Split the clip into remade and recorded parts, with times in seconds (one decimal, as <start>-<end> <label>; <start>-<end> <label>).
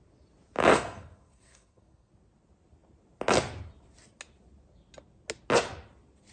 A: 0.0-0.7 recorded; 0.7-2.1 remade; 2.1-6.3 recorded